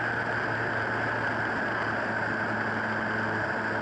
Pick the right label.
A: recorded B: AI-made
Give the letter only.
A